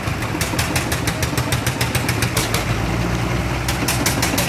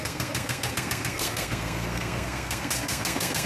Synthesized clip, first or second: second